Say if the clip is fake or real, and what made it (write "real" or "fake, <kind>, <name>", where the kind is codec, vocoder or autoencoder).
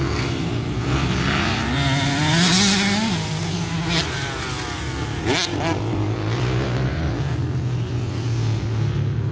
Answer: real